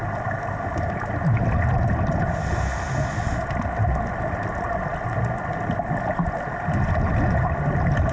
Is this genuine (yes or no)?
yes